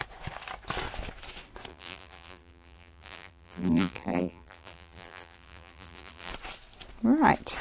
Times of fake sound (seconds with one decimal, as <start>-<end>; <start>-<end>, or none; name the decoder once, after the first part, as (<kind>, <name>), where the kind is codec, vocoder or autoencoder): 1.7-6.3 (vocoder, BigVGAN v2)